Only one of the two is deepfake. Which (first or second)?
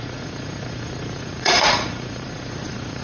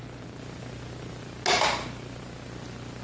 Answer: first